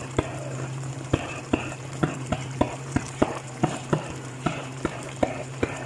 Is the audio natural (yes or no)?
no